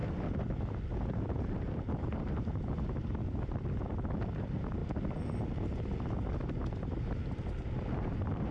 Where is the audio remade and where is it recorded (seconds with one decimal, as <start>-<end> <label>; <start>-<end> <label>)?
0.0-3.8 remade; 3.8-8.5 recorded